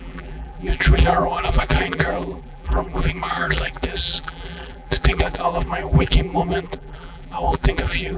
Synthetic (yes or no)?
yes